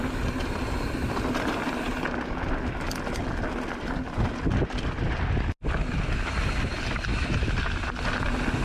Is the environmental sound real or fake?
real